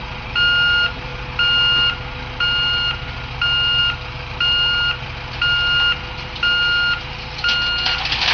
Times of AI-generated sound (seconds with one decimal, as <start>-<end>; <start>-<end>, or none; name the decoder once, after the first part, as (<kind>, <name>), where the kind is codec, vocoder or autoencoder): none